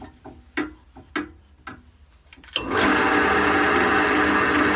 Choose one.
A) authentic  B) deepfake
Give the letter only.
A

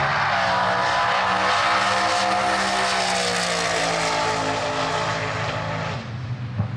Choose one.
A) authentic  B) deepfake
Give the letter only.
A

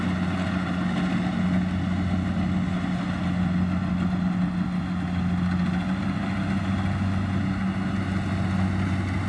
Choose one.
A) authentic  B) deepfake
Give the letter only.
A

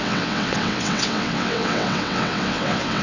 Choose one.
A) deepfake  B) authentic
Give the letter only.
A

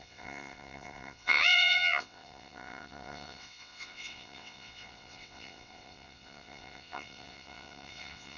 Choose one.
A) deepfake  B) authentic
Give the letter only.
A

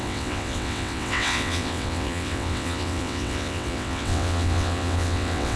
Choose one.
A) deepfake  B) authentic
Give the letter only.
A